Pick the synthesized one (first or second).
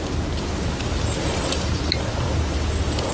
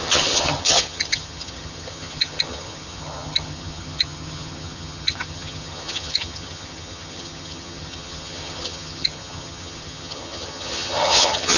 second